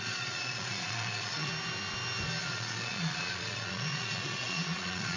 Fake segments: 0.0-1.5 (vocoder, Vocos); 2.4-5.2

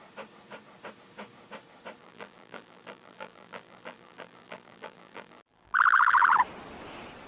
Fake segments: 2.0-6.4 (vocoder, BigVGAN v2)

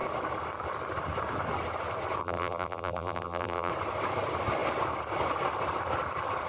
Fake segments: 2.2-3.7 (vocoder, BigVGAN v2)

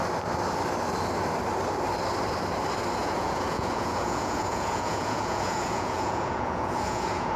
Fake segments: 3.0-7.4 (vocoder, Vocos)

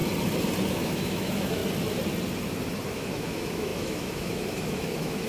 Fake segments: 0.7-1.6 (autoencoder, DAC-VAE); 2.9-5.3